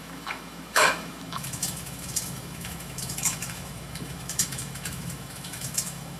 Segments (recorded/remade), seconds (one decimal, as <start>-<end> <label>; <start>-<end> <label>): 0.0-6.2 remade